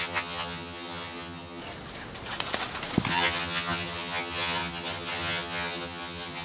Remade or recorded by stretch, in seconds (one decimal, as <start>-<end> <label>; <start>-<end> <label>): 0.0-1.6 remade; 1.6-3.1 recorded; 3.1-6.4 remade